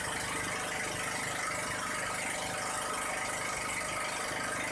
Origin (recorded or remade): recorded